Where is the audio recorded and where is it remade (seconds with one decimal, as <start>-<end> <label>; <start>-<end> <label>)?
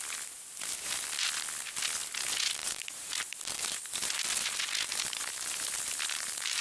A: 0.0-2.6 recorded; 2.6-4.1 remade; 4.1-4.9 recorded; 4.9-6.6 remade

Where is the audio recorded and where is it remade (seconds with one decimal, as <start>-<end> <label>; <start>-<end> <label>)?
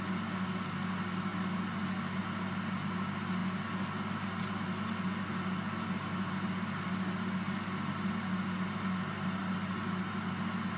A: 0.0-10.8 recorded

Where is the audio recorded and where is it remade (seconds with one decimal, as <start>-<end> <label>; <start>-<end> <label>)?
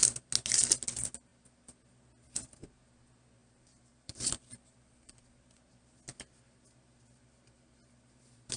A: 0.0-3.4 recorded; 3.4-5.1 remade; 5.1-8.6 recorded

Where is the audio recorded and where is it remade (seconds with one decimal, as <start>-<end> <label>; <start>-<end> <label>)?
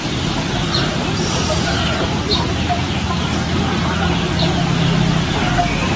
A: 0.0-3.6 remade; 3.6-6.0 recorded